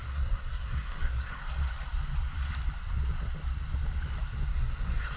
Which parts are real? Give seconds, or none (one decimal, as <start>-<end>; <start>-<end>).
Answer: 1.4-4.5

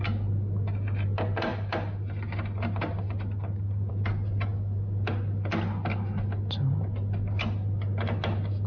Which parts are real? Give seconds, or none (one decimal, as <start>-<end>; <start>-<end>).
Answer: 0.0-8.7